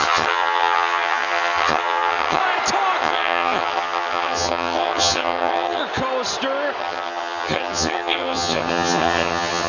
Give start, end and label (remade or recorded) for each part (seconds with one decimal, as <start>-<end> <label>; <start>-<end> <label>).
0.0-2.4 remade; 2.4-3.0 recorded; 3.0-5.8 remade; 5.8-6.8 recorded; 6.8-9.7 remade